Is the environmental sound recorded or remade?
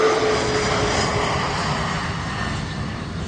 recorded